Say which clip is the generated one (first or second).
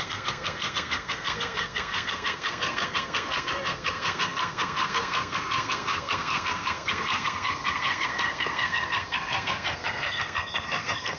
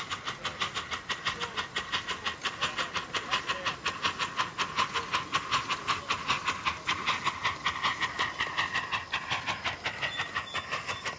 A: first